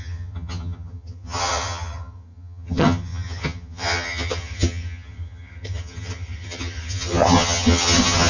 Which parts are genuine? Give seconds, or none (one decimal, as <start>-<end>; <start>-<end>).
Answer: none

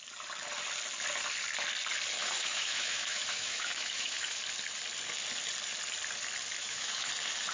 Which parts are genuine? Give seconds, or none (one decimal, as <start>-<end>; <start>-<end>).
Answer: 0.0-2.2; 4.4-6.6; 7.1-7.5

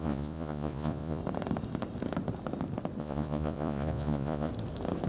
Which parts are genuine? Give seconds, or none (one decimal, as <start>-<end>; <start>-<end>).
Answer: 1.2-3.0; 4.5-5.1

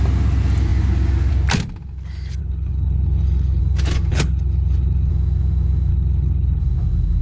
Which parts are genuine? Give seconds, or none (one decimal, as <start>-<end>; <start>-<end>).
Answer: 0.0-2.4; 3.6-4.1; 5.1-5.9; 6.6-7.2

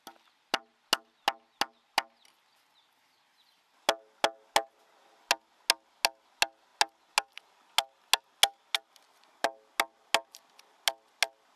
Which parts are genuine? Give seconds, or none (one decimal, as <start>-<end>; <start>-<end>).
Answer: 0.0-11.6

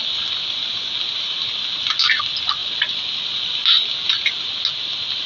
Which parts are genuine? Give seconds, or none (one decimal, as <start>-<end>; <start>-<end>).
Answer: 0.0-5.3

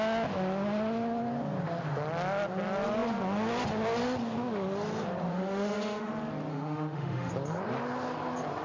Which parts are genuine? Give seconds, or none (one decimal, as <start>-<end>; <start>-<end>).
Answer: 0.0-5.3; 6.1-6.5; 7.3-8.6